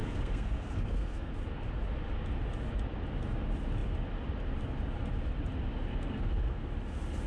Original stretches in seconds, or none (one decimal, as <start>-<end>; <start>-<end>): 1.3-5.9; 6.7-7.3

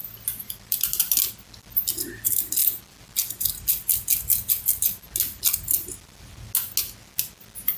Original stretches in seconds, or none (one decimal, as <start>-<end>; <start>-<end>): 0.0-7.8

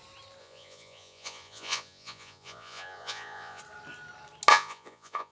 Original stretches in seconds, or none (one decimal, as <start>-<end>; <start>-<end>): 0.0-0.4; 3.6-4.5

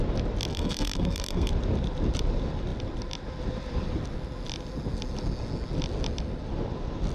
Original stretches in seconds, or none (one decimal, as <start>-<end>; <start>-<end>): 0.0-0.5; 1.5-7.1

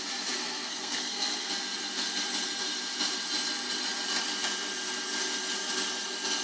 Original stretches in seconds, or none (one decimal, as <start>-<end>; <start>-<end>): 0.0-0.4; 1.5-6.4

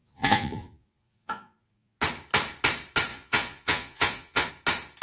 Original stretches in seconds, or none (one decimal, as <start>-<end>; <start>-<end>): 2.0-3.1; 4.5-5.0

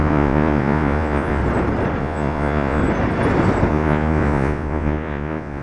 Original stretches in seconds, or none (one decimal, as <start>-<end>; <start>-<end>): 1.4-2.0; 2.8-3.7

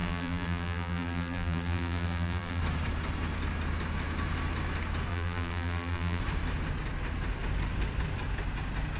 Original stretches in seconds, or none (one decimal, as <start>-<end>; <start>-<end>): 2.6-5.1; 6.2-9.0